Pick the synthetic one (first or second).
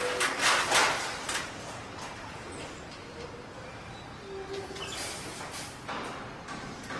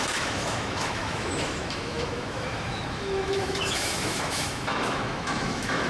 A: second